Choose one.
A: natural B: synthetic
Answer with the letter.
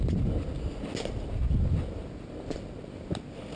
A